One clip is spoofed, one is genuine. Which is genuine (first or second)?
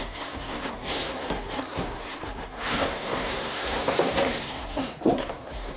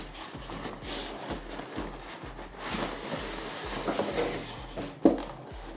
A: second